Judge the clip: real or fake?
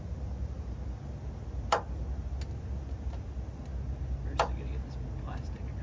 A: real